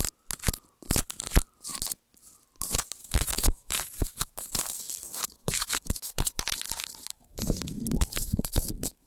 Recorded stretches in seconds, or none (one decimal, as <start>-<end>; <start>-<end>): 0.0-3.0; 6.3-7.1

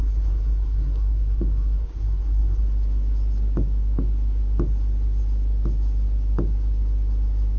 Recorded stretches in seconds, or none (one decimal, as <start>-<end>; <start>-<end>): 2.6-7.6

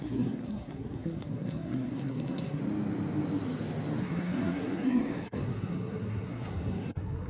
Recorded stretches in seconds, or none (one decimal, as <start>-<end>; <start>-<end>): 2.6-4.0

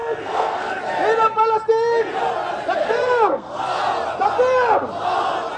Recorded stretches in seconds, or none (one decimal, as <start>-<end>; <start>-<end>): 0.8-2.8; 3.8-5.6

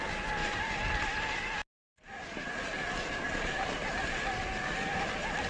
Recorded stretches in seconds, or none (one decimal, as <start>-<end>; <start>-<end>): 0.0-5.5